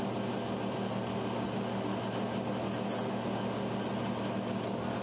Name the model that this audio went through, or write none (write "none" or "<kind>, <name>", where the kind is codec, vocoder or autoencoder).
none